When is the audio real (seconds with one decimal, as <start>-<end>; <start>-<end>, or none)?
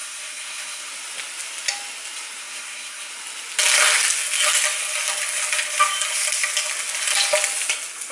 0.9-2.4; 3.1-8.1